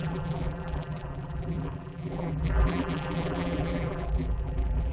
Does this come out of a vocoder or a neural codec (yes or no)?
yes